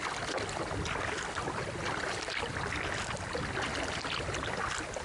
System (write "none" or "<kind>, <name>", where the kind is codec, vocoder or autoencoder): none